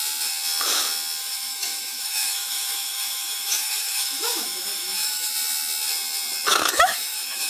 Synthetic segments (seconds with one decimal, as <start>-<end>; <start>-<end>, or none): 1.2-5.3; 6.5-7.5